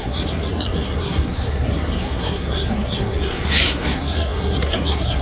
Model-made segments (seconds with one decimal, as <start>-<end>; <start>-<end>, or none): 0.0-5.2